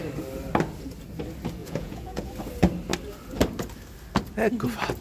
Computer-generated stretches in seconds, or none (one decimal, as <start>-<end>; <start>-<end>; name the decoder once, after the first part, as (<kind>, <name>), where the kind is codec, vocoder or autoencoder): 1.6-2.3 (vocoder, Vocos)